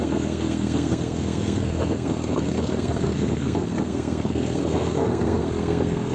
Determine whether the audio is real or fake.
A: fake